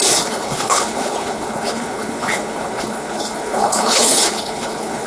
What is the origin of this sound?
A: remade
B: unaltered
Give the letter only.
A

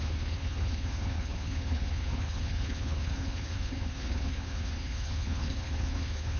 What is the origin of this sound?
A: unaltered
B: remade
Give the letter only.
B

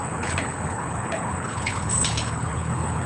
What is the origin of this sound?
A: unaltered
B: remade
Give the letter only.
B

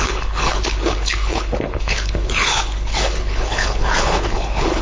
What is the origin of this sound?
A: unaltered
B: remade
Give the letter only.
B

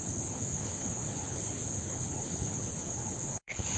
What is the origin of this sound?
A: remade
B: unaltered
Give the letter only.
A